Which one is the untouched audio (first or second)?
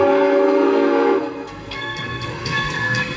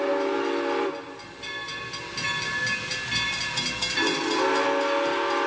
second